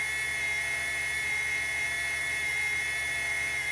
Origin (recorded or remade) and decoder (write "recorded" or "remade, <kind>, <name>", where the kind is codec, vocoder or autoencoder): recorded